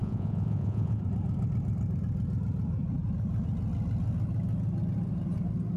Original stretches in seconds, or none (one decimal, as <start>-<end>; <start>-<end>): 1.0-5.8